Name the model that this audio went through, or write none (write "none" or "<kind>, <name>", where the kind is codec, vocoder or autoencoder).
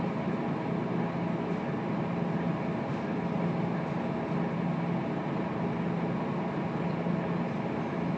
none